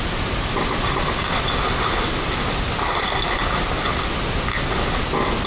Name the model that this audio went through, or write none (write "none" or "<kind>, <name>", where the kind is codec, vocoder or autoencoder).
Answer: none